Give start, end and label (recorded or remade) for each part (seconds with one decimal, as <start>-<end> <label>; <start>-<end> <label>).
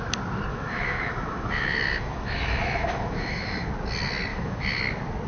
0.0-0.5 recorded; 0.5-3.7 remade; 3.7-4.3 recorded; 4.3-4.8 remade; 4.8-5.3 recorded